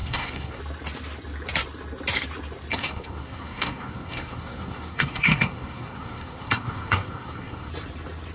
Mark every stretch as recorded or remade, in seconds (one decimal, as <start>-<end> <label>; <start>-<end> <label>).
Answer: 0.0-0.6 remade; 0.6-2.7 recorded; 2.7-7.7 remade; 7.7-8.3 recorded